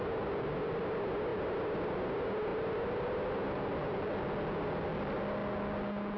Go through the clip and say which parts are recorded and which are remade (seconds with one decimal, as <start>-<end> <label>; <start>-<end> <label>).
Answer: 0.0-6.2 recorded